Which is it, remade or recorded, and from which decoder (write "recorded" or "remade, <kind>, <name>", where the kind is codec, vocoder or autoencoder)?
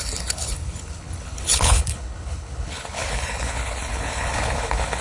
remade, codec, HILCodec